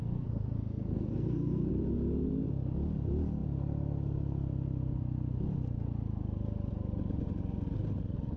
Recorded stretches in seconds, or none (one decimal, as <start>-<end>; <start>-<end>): 1.7-8.4